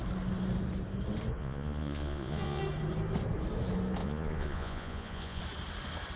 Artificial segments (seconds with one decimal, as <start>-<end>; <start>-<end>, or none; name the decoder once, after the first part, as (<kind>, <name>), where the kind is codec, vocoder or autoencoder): 1.4-2.6 (vocoder, Vocos); 4.0-5.4